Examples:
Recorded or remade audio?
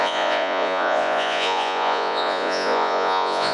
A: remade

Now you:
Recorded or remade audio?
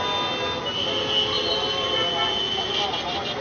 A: recorded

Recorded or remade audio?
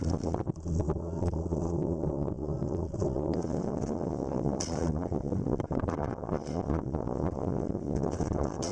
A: remade